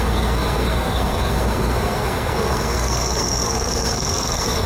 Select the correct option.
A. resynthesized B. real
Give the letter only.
A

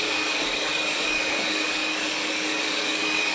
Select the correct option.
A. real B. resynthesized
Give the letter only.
B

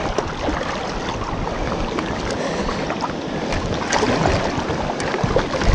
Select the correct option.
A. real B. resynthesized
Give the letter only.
A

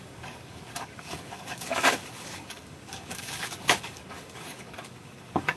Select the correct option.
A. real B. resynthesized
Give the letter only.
B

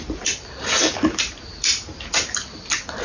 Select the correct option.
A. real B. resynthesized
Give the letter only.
A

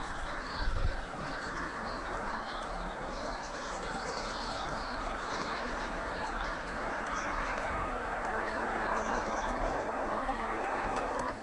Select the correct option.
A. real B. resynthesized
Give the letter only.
B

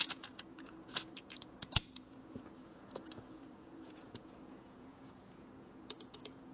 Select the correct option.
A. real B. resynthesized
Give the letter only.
B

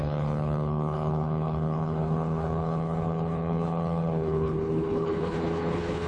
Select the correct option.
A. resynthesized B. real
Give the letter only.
A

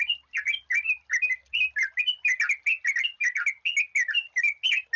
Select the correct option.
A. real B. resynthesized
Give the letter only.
A